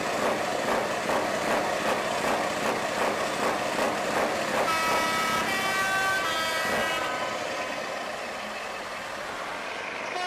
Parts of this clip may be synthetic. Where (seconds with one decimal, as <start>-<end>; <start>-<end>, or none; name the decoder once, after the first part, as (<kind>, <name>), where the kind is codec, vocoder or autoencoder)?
none